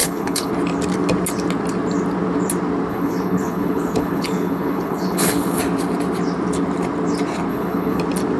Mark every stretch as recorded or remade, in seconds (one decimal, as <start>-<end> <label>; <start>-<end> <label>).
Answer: 0.0-0.5 remade; 0.5-2.9 recorded; 2.9-5.6 remade; 5.6-7.5 recorded; 7.5-8.0 remade; 8.0-8.4 recorded

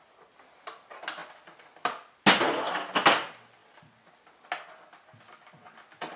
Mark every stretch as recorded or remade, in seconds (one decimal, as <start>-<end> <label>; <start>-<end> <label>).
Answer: 0.0-6.2 recorded